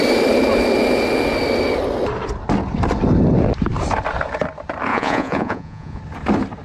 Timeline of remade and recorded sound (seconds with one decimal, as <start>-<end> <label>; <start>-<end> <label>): 0.0-4.9 recorded; 4.9-6.0 remade; 6.0-6.6 recorded